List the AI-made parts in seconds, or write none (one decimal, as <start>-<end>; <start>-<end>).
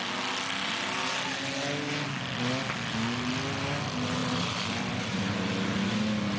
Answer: 4.2-5.0